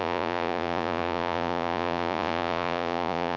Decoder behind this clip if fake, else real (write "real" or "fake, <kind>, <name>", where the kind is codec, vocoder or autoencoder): fake, vocoder, Vocos